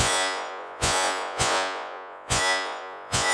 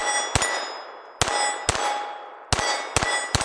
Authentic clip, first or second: second